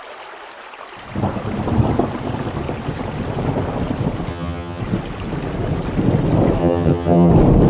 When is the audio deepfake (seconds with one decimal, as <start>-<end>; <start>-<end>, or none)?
4.3-4.8; 6.6-7.3